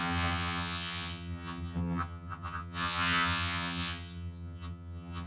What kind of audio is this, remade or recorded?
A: remade